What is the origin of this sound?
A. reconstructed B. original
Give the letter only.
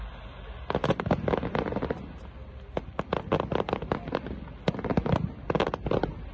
B